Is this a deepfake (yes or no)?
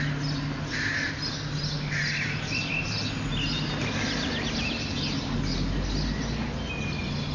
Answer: no